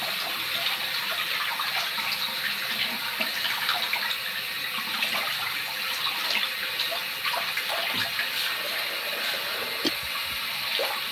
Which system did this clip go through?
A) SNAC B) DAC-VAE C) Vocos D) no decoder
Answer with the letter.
D